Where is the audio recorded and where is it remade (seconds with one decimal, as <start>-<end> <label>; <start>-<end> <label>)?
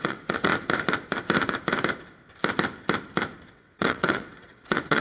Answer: 0.0-0.5 remade; 0.5-3.5 recorded; 3.5-5.0 remade